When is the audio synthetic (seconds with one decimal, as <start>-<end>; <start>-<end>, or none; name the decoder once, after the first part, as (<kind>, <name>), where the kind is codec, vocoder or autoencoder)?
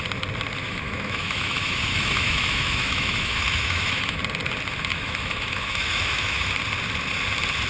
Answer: 0.6-4.2 (autoencoder, DAC-VAE); 4.9-6.5